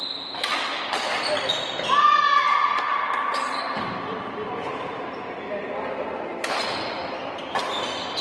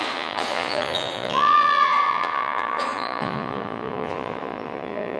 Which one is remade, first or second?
second